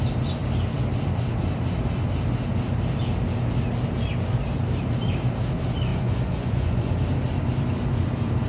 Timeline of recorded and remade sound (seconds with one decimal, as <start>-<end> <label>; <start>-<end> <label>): 0.0-5.9 recorded; 5.9-6.9 remade; 6.9-8.5 recorded